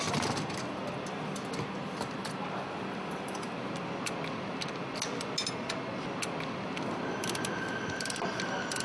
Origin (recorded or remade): recorded